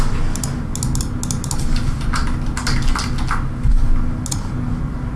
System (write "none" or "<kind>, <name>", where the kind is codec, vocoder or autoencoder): none